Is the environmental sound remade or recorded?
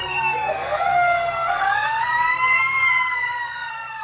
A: remade